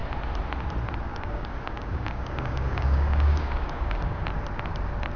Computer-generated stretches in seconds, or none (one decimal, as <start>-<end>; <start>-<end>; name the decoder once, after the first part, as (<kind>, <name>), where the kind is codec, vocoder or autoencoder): 1.1-4.2 (codec, DAC)